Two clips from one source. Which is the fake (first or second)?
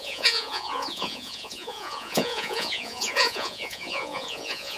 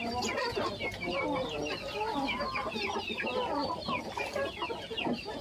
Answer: first